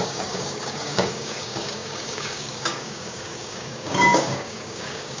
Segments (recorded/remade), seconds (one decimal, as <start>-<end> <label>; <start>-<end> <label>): 0.0-5.2 remade